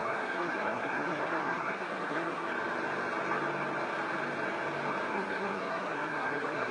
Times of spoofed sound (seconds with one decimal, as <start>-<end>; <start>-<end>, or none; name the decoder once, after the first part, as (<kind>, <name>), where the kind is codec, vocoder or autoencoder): 0.0-2.5 (codec, SNAC); 5.1-6.7